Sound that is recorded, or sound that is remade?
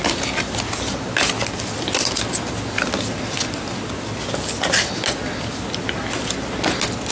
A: recorded